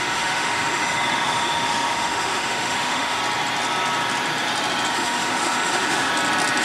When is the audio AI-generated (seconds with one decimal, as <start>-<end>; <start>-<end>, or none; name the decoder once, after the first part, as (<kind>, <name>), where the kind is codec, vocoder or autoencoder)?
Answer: 0.0-3.2 (autoencoder, DAC-VAE); 4.9-6.1